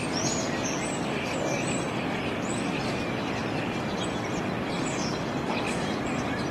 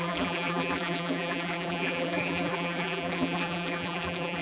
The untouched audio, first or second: first